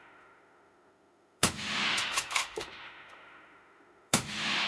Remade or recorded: remade